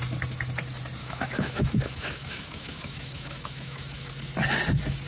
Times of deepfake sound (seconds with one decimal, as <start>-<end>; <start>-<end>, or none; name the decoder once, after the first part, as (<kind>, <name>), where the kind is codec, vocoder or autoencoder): 1.0-4.1 (autoencoder, DAC-VAE)